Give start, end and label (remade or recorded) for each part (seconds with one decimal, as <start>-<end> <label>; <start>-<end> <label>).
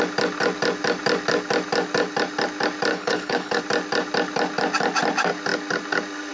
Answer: 0.0-2.9 recorded; 2.9-3.6 remade; 3.6-6.3 recorded